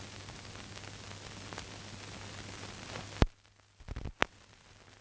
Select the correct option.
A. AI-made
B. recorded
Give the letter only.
B